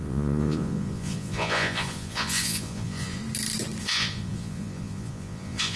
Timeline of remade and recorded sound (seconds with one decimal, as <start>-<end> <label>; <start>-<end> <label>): 0.0-3.2 remade; 3.2-3.8 recorded; 3.8-5.8 remade